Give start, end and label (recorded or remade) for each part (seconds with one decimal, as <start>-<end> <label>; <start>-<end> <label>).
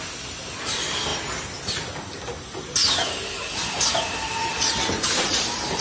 0.0-4.4 recorded; 4.4-5.8 remade